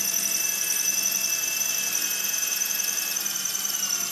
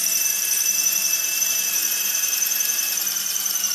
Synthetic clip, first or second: second